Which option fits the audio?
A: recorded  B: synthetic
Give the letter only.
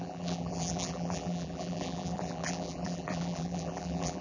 B